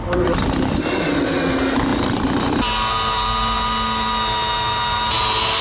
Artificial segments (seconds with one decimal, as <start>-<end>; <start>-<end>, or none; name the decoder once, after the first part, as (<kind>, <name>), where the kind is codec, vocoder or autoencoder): none